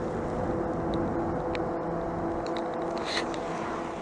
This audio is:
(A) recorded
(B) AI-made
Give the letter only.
A